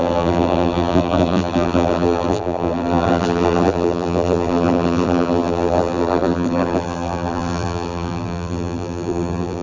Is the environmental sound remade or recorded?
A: remade